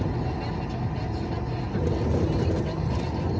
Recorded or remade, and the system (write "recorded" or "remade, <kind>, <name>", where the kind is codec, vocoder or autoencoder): recorded